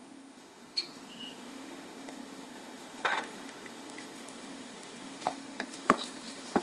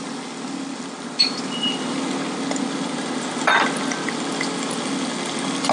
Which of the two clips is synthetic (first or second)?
first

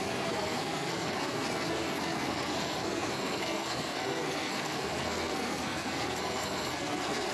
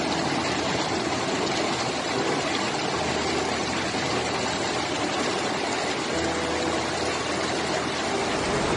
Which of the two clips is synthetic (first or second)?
first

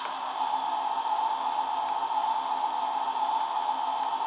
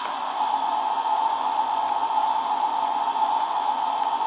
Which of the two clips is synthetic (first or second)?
second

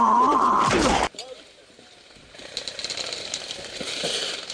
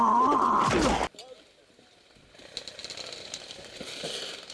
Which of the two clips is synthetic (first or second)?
first